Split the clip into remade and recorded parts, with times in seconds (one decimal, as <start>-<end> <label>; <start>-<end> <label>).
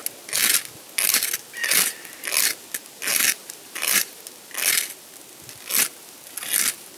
0.0-3.4 recorded; 3.4-4.2 remade; 4.2-7.0 recorded